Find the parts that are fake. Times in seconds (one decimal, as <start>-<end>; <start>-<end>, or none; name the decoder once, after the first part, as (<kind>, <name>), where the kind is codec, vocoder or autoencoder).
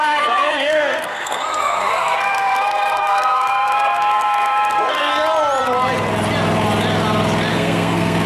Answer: 0.0-5.1 (codec, SNAC); 7.5-8.3